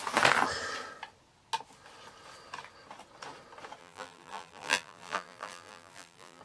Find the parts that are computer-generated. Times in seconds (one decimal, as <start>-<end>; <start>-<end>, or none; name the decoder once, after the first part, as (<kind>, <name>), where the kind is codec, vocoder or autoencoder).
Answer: 3.8-6.4 (vocoder, BigVGAN v2)